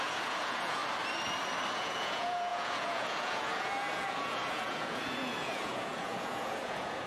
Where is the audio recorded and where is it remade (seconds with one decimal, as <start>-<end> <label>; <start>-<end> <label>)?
0.0-0.8 remade; 0.8-1.7 recorded; 1.7-7.1 remade

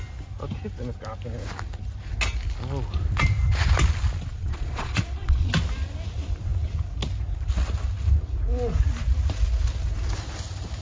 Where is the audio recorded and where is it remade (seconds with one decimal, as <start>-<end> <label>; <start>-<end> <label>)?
0.0-4.3 recorded; 4.3-5.5 remade; 5.5-10.8 recorded

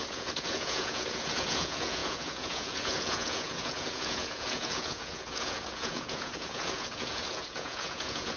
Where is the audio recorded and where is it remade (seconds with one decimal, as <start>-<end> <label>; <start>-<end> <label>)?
0.0-8.4 remade

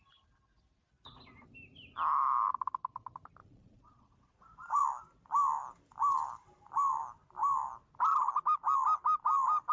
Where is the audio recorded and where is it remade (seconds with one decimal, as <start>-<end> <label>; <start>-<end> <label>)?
0.0-3.4 recorded; 3.4-4.8 remade; 4.8-9.7 recorded

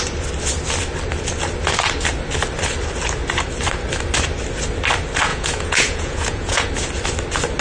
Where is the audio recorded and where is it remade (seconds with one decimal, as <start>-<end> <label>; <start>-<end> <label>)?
0.0-5.3 recorded; 5.3-6.7 remade; 6.7-7.6 recorded